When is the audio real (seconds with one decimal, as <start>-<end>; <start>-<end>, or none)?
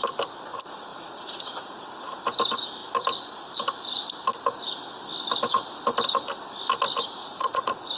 0.0-0.9; 2.2-7.2